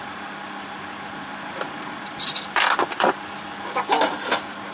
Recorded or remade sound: recorded